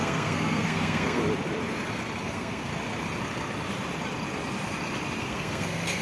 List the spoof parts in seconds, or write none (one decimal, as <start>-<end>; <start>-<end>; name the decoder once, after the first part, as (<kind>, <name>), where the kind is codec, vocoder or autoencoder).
0.0-1.2 (codec, SNAC); 2.2-2.7; 5.2-6.0